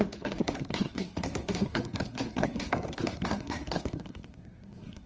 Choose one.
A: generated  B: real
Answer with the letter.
A